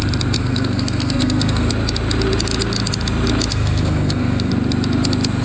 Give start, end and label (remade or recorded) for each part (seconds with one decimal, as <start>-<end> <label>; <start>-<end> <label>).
0.0-0.4 recorded; 0.4-1.7 remade; 1.7-3.5 recorded; 3.5-4.5 remade; 4.5-5.4 recorded